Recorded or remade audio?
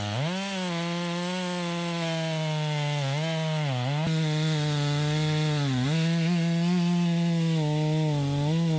recorded